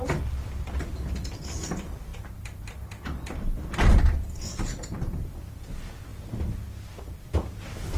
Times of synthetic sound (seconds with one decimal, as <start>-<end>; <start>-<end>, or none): 0.0-6.1; 7.0-8.0